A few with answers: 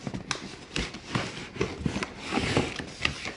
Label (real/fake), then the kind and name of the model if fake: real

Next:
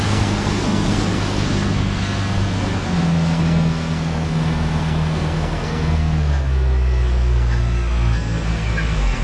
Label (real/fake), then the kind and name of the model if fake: fake, codec, SNAC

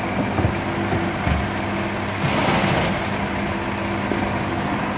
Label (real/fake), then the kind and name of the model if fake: real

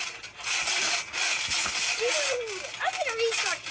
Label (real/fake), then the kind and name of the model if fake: real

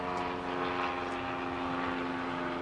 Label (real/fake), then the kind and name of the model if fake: real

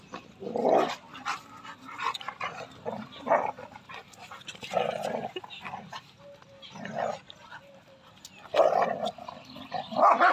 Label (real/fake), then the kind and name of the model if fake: real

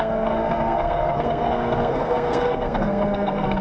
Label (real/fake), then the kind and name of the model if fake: fake, codec, SNAC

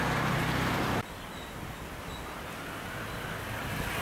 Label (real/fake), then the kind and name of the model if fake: real